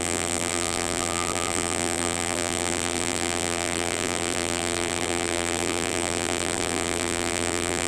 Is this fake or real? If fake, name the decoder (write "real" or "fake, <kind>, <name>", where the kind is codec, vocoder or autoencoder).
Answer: fake, vocoder, BigVGAN v2